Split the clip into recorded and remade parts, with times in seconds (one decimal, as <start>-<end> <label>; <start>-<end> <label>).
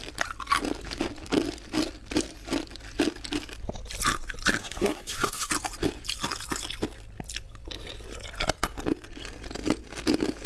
0.0-4.6 recorded; 4.6-5.5 remade; 5.5-10.5 recorded